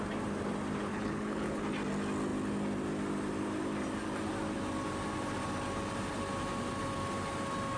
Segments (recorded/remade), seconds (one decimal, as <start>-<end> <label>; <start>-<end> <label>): 0.0-0.9 recorded; 0.9-1.6 remade; 1.6-7.8 recorded